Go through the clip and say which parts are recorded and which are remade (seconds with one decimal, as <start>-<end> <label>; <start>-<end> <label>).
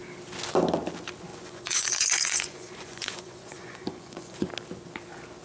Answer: 0.0-1.3 recorded; 1.3-4.5 remade; 4.5-5.4 recorded